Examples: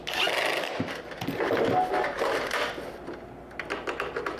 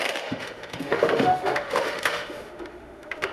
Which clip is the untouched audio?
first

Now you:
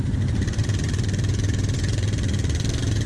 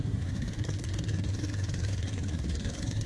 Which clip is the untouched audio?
first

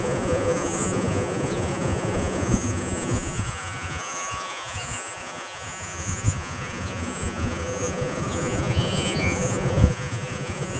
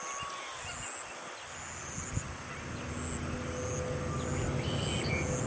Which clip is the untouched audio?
second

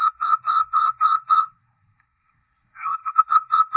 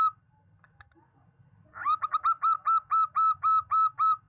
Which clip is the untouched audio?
second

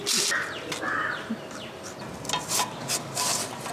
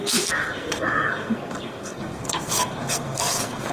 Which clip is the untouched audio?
first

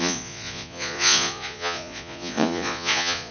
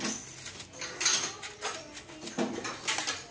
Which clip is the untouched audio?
second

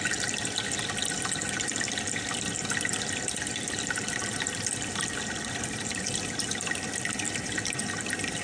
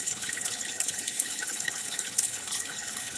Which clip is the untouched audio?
first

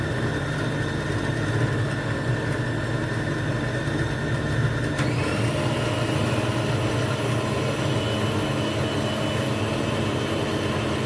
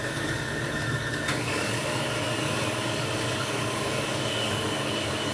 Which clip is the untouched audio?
first